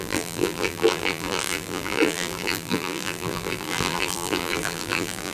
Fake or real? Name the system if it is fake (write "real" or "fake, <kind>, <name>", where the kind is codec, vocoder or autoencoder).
fake, vocoder, BigVGAN v2